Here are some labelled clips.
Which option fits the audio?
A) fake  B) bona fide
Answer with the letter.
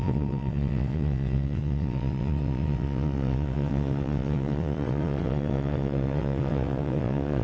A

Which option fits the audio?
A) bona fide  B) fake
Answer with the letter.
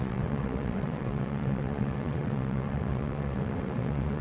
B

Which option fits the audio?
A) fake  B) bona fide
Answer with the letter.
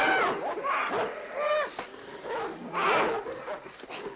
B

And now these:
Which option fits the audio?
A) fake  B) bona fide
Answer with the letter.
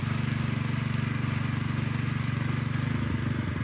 B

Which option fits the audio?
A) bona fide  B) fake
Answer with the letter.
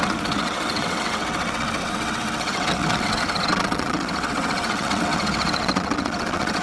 B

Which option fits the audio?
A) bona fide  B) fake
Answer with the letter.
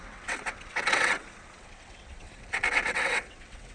B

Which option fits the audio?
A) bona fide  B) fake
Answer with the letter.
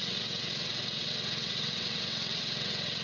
B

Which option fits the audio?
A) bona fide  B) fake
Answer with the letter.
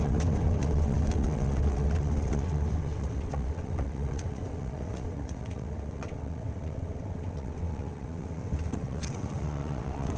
B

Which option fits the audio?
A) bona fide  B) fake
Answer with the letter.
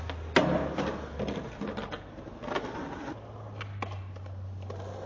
A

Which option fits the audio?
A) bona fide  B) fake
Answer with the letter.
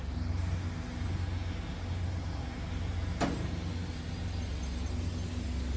A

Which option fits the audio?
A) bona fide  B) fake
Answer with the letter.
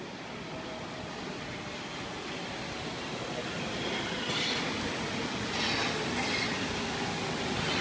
A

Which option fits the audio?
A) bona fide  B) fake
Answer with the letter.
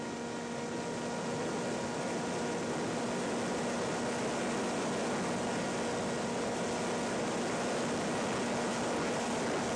A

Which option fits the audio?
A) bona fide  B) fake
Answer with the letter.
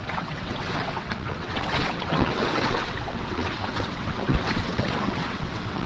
B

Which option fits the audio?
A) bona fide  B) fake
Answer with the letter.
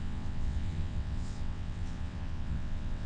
B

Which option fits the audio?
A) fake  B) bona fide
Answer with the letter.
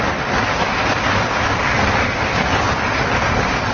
B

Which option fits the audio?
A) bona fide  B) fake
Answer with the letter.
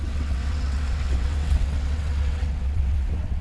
B